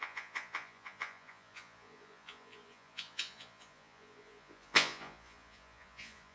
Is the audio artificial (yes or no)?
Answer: yes